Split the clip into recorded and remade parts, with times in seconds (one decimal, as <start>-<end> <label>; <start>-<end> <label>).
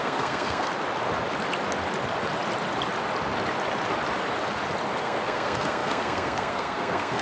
0.0-0.7 remade; 0.7-5.0 recorded; 5.0-7.2 remade